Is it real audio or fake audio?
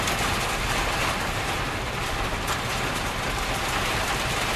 real